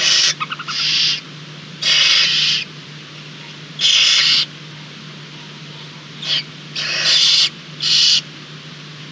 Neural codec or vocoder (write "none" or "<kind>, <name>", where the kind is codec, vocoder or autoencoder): none